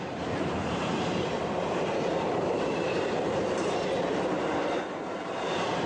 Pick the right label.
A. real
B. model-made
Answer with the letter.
B